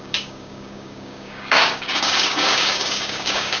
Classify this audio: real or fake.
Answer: fake